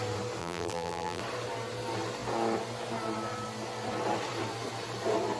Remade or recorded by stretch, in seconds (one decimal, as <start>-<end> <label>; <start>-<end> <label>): 0.0-0.4 recorded; 0.4-1.2 remade; 1.2-5.4 recorded